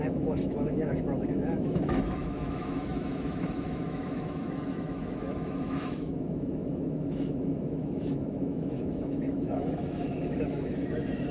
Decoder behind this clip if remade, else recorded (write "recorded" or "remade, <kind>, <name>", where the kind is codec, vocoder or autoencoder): remade, autoencoder, DAC-VAE